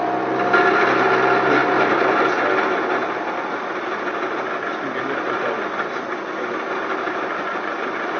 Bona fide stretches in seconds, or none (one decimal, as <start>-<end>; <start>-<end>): 0.0-7.4